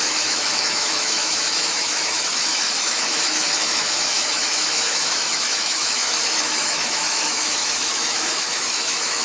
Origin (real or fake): fake